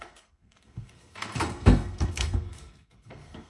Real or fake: fake